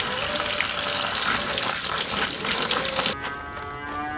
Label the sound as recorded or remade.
recorded